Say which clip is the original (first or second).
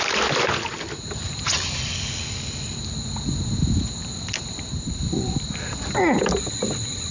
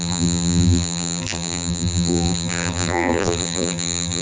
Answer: first